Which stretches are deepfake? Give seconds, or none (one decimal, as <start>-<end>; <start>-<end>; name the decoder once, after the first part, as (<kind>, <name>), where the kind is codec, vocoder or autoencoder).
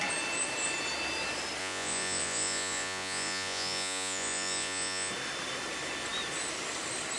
1.6-5.1 (vocoder, Vocos)